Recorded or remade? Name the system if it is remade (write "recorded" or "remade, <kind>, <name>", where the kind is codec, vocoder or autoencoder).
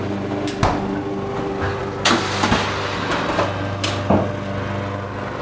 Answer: recorded